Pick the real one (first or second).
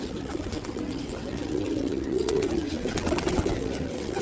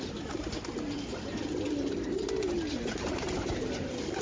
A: second